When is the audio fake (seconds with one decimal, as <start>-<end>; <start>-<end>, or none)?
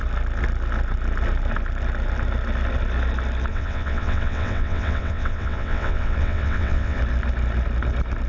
3.5-7.0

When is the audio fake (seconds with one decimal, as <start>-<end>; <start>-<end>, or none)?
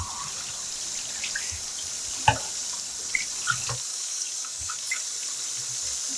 3.9-5.0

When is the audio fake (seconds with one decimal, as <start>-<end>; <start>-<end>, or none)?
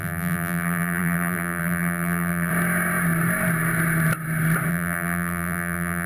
0.0-2.5; 4.7-6.1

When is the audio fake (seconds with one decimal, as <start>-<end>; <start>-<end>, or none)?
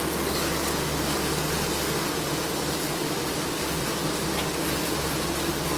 none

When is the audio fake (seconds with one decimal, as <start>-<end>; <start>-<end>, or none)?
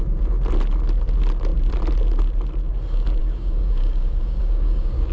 3.2-5.1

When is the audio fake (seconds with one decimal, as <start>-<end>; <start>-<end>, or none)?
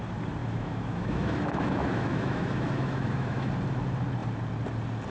0.4-3.5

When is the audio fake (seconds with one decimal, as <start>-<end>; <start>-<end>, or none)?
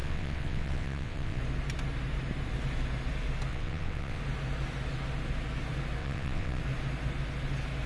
0.0-1.4; 3.5-4.2; 6.0-6.6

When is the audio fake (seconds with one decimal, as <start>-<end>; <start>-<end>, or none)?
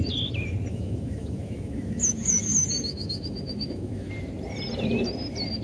0.7-4.1